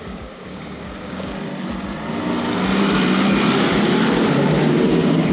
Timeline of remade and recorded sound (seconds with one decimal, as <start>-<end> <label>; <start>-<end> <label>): 0.0-1.5 remade; 1.5-4.7 recorded; 4.7-5.3 remade